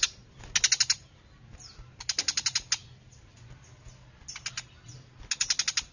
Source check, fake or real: real